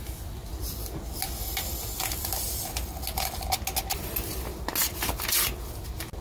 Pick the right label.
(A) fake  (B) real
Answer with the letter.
B